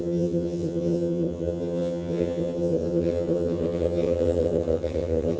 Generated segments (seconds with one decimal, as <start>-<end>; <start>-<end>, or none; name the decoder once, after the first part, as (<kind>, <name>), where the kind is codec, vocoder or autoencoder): 0.0-5.4 (vocoder, HiFi-GAN)